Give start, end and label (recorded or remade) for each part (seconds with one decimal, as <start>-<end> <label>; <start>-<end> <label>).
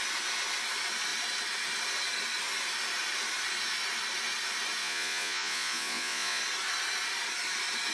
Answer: 0.0-4.8 recorded; 4.8-6.4 remade; 6.4-7.9 recorded